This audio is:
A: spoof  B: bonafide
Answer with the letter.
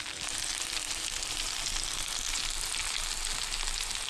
B